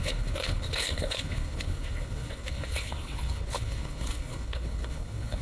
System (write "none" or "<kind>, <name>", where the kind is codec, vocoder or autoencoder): codec, HILCodec